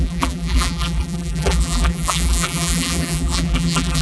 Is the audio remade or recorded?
remade